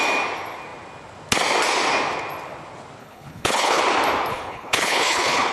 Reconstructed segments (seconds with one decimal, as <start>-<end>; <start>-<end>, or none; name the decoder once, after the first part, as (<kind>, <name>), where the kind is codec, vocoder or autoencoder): 3.0-3.8 (codec, HILCodec); 4.3-5.5